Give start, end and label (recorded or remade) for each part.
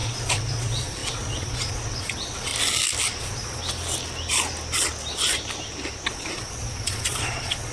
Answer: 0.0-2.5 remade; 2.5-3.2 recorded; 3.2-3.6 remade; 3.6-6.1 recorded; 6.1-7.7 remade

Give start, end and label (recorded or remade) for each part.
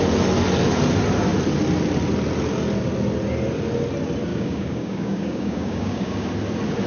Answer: 0.0-4.3 recorded; 4.3-6.3 remade; 6.3-6.9 recorded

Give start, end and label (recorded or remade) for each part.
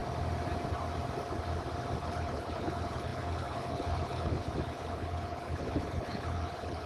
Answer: 0.0-2.0 recorded; 2.0-6.9 remade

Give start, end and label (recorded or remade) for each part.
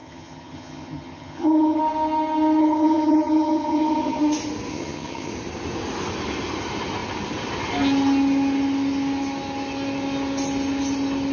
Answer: 0.0-1.8 remade; 1.8-2.6 recorded; 2.6-4.2 remade; 4.2-4.7 recorded; 4.7-5.3 remade; 5.3-11.3 recorded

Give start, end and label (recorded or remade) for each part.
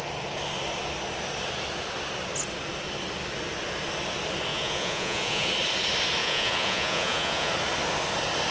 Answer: 0.0-4.5 recorded; 4.5-5.5 remade; 5.5-6.2 recorded; 6.2-7.5 remade; 7.5-8.5 recorded